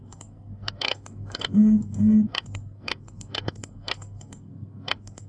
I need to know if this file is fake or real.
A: fake